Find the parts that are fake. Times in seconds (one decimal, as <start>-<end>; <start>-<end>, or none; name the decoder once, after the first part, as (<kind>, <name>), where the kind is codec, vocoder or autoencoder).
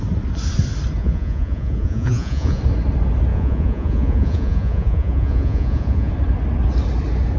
1.0-2.6 (vocoder, Vocos); 3.3-6.1